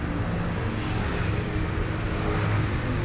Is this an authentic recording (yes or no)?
yes